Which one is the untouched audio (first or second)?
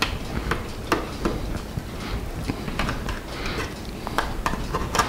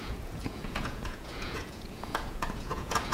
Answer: first